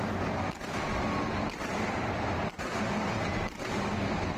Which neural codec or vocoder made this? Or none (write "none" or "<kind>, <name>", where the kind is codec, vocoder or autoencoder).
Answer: none